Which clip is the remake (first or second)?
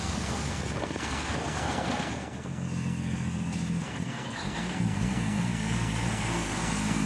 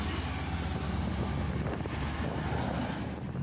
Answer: first